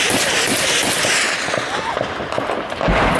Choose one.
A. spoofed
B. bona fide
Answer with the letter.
B